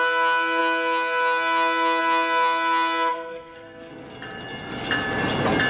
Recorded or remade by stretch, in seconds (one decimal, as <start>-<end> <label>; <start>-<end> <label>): 0.0-3.1 recorded; 3.1-3.9 remade; 3.9-5.7 recorded